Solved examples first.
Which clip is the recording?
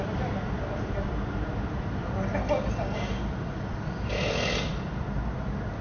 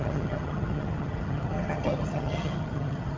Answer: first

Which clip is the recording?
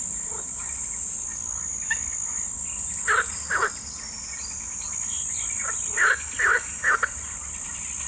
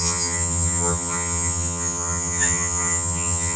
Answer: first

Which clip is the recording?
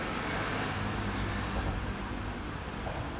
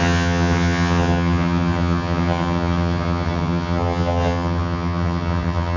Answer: first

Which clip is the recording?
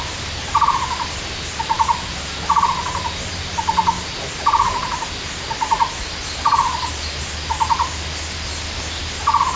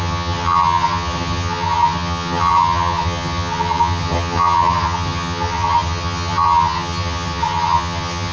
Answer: first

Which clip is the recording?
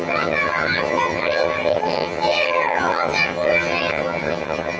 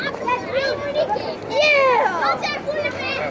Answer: second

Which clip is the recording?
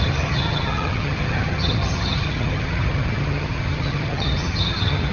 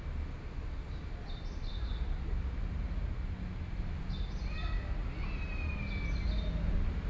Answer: second